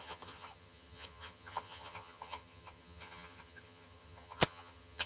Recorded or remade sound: remade